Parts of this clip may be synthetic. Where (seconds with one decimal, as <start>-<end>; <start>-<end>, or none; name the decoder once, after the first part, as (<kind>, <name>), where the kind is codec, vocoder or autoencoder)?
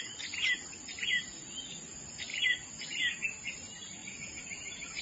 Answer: none